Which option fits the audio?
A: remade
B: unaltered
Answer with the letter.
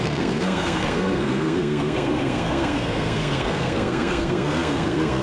A